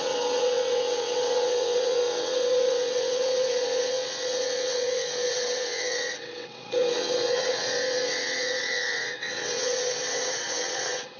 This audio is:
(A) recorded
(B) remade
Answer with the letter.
B